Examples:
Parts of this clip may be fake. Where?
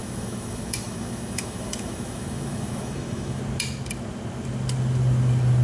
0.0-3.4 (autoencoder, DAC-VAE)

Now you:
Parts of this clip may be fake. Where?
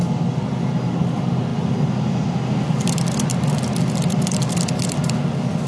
none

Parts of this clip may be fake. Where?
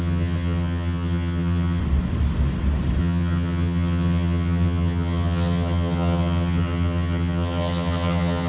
0.0-1.8 (vocoder, HiFi-GAN); 3.0-8.5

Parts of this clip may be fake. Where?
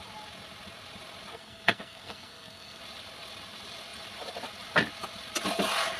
1.3-2.8 (codec, SNAC)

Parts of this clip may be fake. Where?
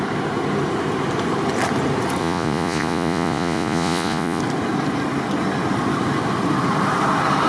2.2-4.4 (vocoder, Vocos)